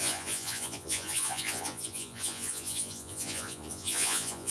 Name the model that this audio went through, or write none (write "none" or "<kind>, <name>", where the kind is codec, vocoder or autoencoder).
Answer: vocoder, Vocos